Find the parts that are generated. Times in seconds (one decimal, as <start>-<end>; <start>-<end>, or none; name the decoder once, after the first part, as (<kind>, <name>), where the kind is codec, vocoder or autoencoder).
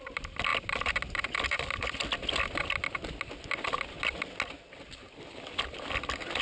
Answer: none